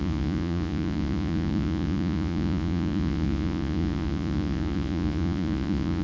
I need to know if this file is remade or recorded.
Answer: remade